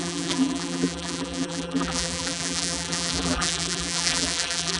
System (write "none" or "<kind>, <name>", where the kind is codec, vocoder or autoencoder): vocoder, BigVGAN v2